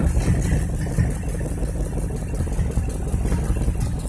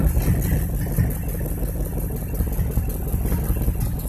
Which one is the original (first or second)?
second